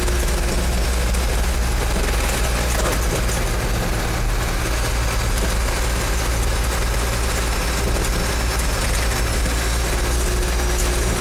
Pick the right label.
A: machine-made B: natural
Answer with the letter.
B